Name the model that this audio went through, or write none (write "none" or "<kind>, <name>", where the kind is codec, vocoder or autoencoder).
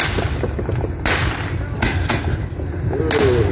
none